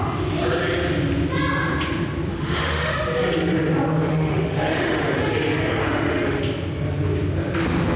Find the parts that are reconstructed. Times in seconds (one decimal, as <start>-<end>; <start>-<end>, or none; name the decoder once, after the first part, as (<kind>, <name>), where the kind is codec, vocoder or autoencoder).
2.3-2.9 (autoencoder, DAC-VAE); 4.1-5.2; 5.8-6.4